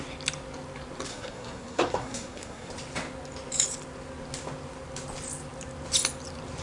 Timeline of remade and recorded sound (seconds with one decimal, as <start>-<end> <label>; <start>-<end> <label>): 0.0-1.1 recorded; 1.1-2.7 remade; 2.7-6.6 recorded